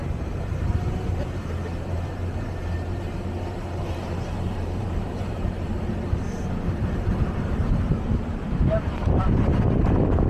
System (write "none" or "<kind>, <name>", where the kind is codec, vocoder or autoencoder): vocoder, BigVGAN v2